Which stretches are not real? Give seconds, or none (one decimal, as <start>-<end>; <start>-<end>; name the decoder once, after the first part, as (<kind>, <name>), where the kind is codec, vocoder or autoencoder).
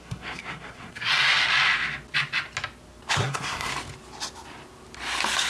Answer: 0.0-1.1 (codec, SNAC); 3.1-3.7